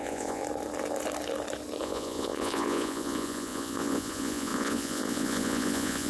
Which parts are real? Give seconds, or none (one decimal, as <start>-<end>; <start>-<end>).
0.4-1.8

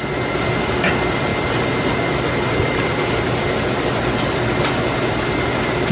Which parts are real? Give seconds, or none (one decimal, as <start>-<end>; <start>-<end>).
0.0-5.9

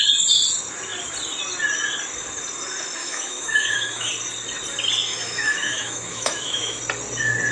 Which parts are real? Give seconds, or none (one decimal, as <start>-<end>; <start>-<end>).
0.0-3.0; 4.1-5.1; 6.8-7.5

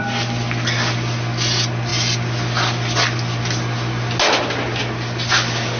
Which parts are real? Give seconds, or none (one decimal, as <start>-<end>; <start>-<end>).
0.0-5.8

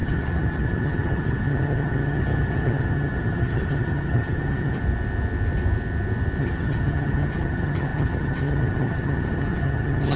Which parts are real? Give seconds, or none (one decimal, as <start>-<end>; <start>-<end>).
4.8-6.4